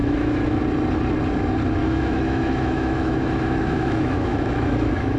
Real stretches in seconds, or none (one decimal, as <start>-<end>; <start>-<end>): 0.6-1.8